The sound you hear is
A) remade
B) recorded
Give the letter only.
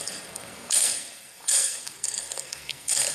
A